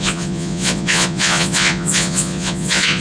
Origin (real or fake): fake